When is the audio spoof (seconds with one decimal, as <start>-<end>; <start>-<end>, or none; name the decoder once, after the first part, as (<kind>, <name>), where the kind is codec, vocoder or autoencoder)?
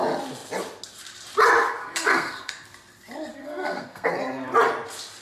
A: 1.8-2.5 (codec, SNAC); 3.3-4.1